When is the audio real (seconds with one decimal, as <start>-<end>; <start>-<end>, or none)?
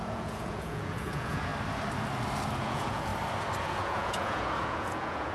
1.5-2.6; 3.1-3.6